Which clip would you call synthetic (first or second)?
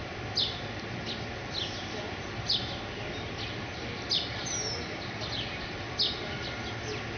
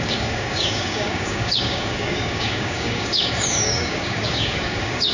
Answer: second